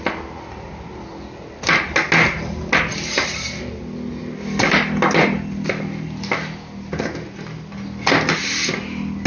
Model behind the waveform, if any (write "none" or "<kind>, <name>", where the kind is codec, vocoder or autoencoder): none